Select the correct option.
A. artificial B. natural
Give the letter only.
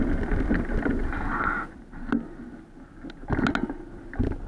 B